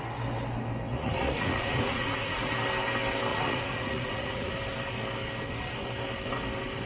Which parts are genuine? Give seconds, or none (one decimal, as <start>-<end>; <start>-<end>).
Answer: 0.0-0.9; 2.5-3.3; 4.5-6.9